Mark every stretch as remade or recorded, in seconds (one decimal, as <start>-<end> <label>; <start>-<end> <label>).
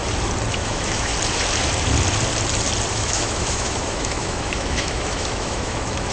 0.0-0.5 recorded; 0.5-1.1 remade; 1.1-2.9 recorded; 2.9-6.1 remade